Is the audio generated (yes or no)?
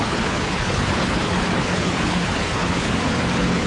yes